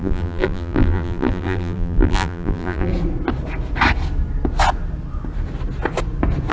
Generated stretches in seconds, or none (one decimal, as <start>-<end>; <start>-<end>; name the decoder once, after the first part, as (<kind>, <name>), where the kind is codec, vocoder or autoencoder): 0.0-2.9 (vocoder, BigVGAN v2)